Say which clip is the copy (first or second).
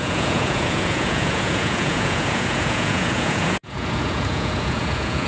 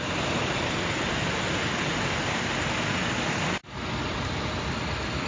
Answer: first